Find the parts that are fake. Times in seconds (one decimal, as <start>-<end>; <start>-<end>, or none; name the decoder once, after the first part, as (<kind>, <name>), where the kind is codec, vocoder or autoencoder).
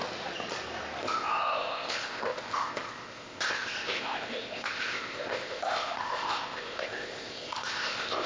1.0-8.3 (codec, ZipCodec)